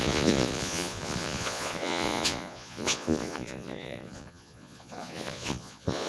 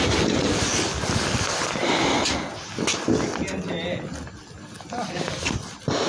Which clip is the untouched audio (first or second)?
second